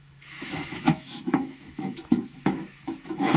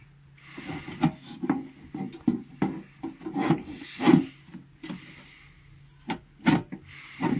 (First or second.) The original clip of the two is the second